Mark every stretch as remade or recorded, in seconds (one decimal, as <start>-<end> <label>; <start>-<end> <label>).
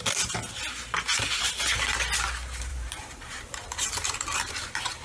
0.0-2.7 recorded; 2.7-4.5 remade; 4.5-5.0 recorded